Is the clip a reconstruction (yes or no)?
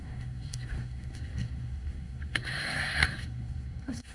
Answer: yes